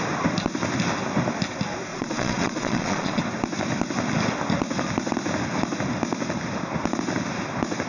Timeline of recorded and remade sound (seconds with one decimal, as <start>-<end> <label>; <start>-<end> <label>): 0.0-1.9 recorded; 1.9-3.2 remade; 3.2-7.9 recorded